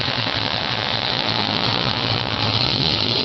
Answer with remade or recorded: remade